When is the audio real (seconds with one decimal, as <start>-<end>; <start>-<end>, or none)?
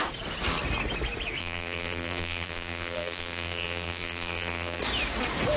0.0-1.4; 4.8-5.6